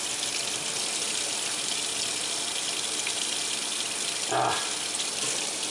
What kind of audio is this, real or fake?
real